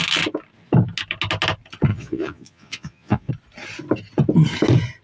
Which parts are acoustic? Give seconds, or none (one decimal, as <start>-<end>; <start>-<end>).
0.0-1.9; 3.3-5.0